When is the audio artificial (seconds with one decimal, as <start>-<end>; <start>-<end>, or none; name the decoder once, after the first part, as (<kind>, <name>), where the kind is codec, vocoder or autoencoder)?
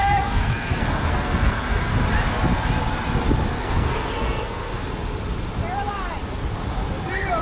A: 0.0-1.9 (codec, SNAC); 3.5-4.7